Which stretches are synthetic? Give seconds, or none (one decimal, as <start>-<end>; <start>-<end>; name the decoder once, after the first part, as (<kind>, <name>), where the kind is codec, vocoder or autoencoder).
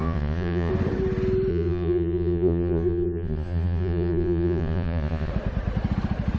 0.0-0.7 (vocoder, Vocos); 1.5-5.3